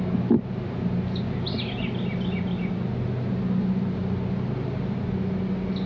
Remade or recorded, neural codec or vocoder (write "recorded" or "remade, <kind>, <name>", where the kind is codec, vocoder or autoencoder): recorded